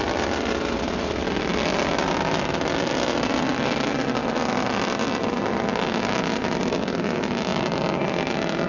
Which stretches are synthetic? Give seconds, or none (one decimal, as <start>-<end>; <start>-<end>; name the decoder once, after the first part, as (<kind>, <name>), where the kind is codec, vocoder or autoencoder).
none